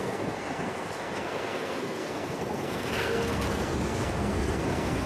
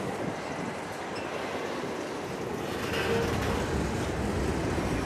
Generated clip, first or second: first